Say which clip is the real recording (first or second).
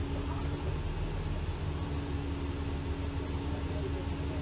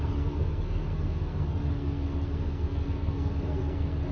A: first